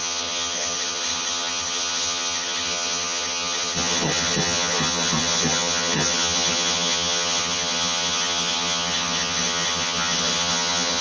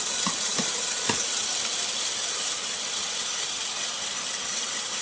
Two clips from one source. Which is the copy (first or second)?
first